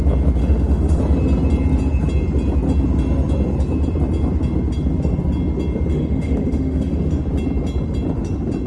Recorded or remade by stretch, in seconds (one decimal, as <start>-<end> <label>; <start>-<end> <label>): 0.0-0.4 recorded; 0.4-1.0 remade; 1.0-5.9 recorded; 5.9-7.0 remade; 7.0-8.7 recorded